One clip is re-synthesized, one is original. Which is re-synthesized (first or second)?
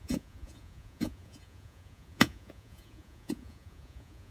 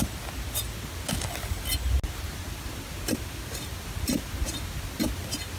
first